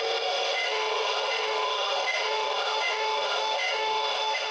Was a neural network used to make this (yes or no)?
yes